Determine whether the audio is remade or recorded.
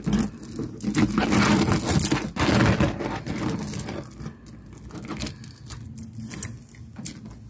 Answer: recorded